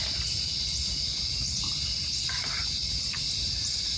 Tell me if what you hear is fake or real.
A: real